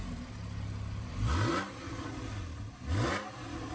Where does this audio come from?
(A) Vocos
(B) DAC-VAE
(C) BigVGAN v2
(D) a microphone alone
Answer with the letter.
D